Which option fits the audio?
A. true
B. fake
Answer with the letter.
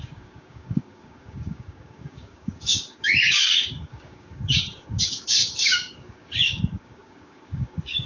B